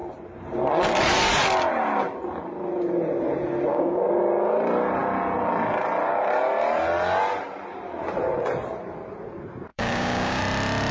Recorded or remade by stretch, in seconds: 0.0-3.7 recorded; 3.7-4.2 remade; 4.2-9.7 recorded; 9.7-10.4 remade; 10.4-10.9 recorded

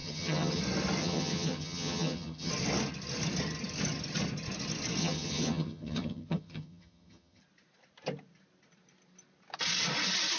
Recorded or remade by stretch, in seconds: 0.0-0.6 remade; 0.6-1.0 recorded; 1.0-2.5 remade; 2.5-5.0 recorded; 5.0-7.4 remade; 7.4-10.4 recorded

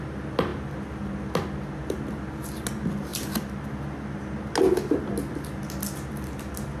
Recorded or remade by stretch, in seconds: 0.0-6.8 recorded